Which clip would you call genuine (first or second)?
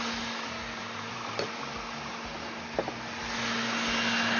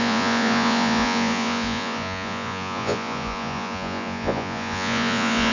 first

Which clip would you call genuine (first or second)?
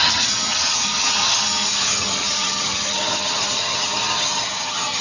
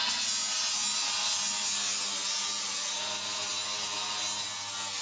second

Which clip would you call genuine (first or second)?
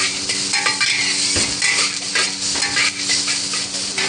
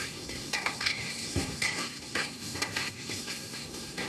first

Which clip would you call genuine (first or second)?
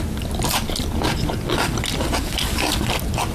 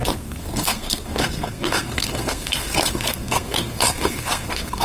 first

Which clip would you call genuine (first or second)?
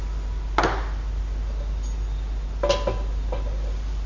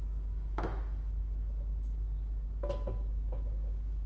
first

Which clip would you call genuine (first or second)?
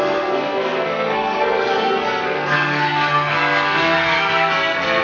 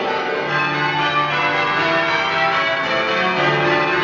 second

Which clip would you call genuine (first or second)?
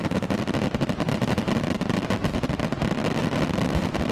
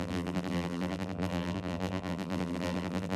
first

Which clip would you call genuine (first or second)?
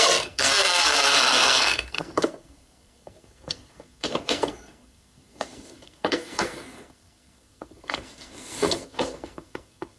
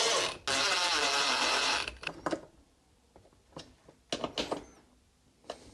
second